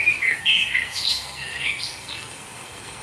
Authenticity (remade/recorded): remade